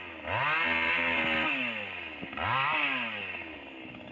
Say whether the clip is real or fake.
real